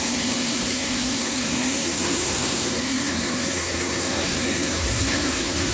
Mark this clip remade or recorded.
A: remade